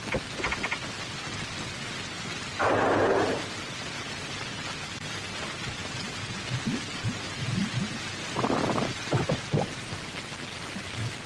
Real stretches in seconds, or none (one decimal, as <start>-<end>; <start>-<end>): 0.0-11.3